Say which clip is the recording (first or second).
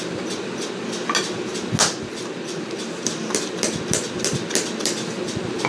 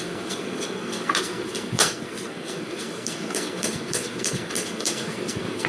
first